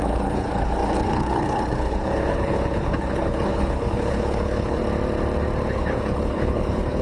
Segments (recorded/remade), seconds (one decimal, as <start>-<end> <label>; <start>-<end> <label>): 0.0-4.8 remade; 4.8-5.7 recorded; 5.7-7.0 remade